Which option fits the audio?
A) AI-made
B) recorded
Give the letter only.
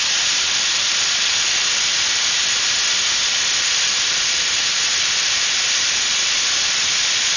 B